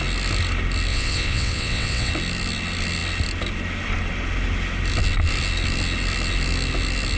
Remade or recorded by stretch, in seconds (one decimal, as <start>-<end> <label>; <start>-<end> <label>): 0.0-0.9 recorded; 0.9-2.1 remade; 2.1-7.2 recorded